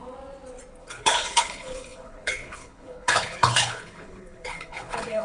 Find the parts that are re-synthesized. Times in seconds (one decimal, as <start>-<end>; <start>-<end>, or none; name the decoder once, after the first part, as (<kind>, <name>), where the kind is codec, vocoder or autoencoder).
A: 0.8-5.2 (codec, HILCodec)

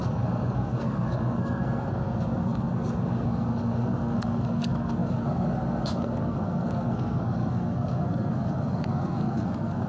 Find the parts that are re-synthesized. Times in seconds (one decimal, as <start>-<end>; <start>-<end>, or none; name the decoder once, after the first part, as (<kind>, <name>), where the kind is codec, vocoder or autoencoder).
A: 0.0-9.9 (codec, SNAC)

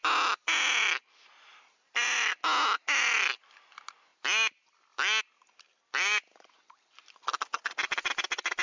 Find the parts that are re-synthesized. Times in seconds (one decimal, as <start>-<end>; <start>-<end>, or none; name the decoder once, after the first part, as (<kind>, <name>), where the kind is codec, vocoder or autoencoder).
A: none

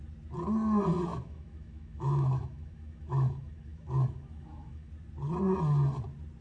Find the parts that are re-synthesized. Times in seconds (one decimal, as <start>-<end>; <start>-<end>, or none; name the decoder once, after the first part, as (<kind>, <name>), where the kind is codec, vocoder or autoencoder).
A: 1.1-4.9 (autoencoder, DAC-VAE)

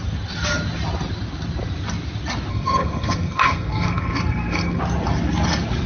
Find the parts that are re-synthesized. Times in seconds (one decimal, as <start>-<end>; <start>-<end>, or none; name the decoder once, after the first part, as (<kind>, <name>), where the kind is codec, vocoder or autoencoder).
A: 2.5-4.8 (codec, SNAC)

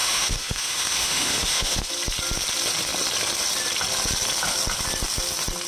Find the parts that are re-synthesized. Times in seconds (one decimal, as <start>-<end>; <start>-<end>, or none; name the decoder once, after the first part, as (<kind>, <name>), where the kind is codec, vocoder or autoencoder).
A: 0.0-1.9 (autoencoder, DAC-VAE)

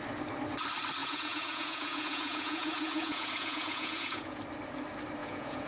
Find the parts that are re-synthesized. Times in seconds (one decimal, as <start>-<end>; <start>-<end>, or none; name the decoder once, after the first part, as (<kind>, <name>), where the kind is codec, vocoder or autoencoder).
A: 1.0-4.4 (vocoder, Vocos); 5.2-5.7

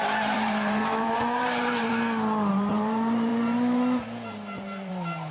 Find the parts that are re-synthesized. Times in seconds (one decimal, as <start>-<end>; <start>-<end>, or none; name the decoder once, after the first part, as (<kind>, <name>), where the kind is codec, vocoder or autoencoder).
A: 0.0-1.9 (vocoder, BigVGAN v2); 2.5-5.3